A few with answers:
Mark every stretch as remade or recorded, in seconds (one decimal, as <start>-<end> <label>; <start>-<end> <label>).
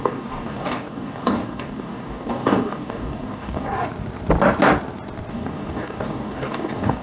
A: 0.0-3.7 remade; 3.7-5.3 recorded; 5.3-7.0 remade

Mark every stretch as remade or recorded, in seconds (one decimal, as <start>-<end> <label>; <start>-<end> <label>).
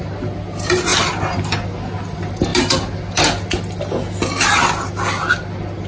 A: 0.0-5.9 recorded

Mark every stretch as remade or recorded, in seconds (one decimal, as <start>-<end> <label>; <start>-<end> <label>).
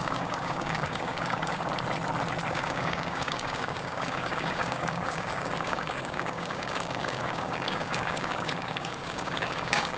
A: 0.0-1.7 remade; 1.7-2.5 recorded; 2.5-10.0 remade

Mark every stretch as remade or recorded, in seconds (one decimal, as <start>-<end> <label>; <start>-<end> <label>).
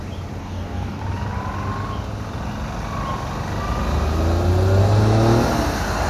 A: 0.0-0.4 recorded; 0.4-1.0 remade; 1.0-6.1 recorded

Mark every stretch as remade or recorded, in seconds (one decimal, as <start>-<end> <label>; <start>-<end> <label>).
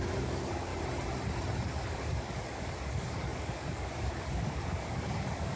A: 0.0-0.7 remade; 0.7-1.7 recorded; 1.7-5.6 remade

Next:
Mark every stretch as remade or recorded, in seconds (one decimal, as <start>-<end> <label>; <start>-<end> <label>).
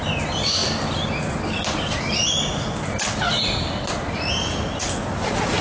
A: 0.0-5.6 recorded